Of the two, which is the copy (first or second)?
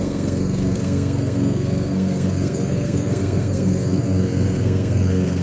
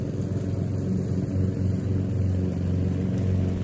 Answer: first